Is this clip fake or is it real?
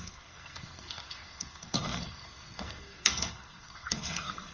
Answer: fake